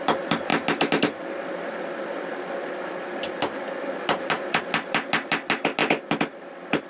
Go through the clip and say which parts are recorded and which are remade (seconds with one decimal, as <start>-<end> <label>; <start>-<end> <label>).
0.0-6.9 recorded